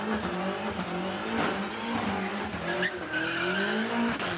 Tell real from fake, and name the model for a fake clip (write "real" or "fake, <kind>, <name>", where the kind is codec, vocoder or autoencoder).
real